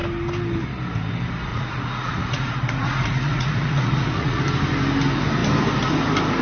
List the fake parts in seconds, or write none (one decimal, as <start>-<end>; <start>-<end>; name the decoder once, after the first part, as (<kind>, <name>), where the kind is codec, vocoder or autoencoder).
1.5-4.4 (vocoder, Vocos)